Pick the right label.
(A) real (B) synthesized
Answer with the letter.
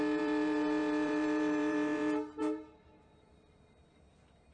B